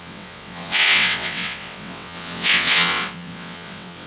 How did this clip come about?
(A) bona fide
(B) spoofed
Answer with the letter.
B